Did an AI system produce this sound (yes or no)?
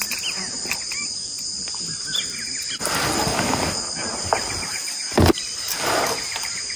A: no